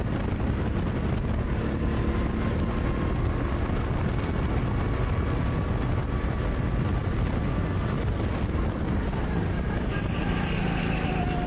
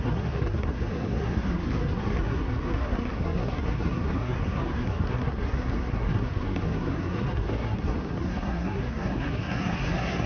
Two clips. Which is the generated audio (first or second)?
second